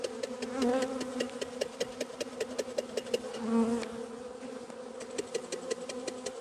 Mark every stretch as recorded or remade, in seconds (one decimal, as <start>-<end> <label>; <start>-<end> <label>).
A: 0.0-6.4 recorded